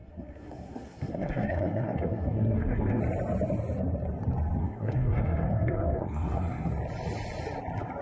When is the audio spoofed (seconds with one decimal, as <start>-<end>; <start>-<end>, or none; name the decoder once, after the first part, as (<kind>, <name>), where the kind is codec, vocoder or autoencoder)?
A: 0.0-3.0 (codec, SNAC); 4.6-6.7